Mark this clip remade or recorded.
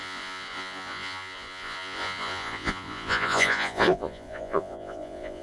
remade